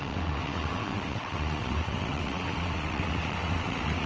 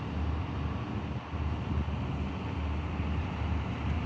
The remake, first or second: first